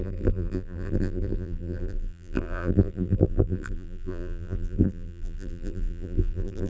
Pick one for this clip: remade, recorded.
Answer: remade